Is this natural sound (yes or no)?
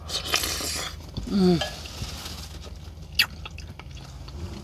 yes